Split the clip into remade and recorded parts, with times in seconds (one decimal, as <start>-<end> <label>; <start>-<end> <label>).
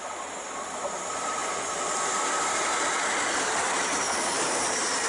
0.0-5.1 recorded